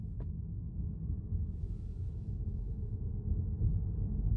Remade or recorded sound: remade